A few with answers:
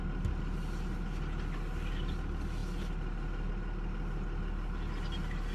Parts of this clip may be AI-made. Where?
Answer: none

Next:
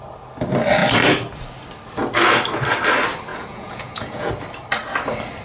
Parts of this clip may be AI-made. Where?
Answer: 3.3-4.3 (vocoder, Vocos)